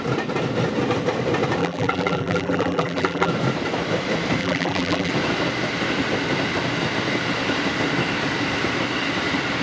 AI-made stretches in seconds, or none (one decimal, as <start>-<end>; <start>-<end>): 1.6-3.3; 4.4-5.1